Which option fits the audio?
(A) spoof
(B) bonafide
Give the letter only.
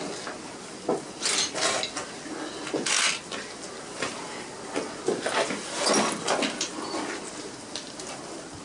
B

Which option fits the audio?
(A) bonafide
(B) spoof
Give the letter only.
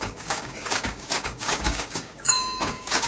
B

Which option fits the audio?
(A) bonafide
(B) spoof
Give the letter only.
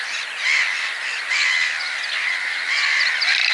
A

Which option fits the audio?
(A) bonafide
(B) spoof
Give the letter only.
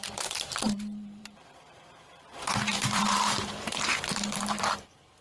B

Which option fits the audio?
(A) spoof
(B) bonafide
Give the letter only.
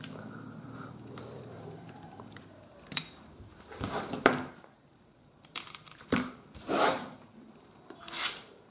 A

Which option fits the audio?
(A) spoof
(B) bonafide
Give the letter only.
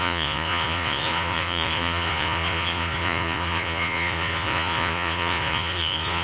A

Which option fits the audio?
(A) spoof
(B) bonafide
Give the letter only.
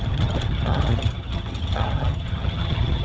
A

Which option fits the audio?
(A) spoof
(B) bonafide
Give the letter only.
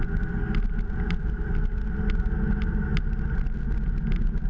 B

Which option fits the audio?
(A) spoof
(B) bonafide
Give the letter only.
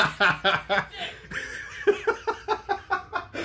B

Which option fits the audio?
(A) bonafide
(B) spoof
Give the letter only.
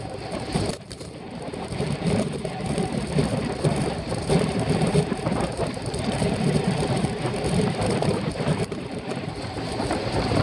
B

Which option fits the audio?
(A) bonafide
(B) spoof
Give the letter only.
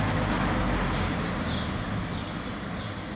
A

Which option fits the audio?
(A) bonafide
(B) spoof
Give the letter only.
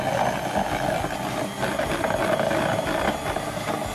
A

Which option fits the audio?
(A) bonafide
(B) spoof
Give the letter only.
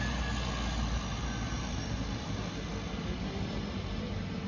A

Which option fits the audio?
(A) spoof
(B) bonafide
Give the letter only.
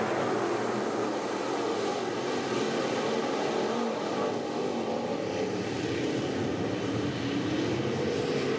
B